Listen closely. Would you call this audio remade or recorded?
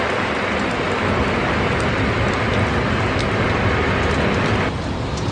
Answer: recorded